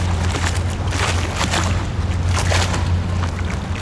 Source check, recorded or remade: recorded